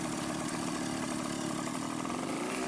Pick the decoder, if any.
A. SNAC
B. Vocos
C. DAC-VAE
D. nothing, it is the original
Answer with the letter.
D